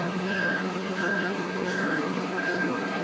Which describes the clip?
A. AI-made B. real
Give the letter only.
A